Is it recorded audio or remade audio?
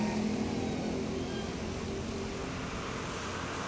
recorded